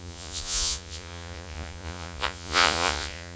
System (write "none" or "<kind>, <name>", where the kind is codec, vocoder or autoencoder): vocoder, Vocos